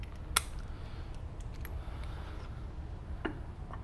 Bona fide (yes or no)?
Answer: yes